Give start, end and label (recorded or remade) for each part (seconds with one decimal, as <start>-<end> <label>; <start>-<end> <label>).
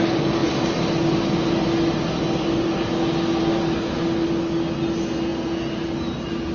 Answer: 0.0-6.5 recorded